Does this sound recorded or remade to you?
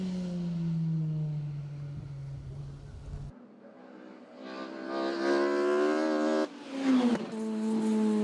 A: recorded